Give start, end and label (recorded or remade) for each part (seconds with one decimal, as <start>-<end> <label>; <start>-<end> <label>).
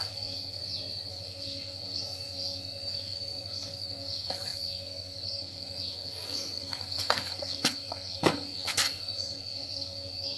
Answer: 0.0-0.6 remade; 0.6-1.1 recorded; 1.1-10.4 remade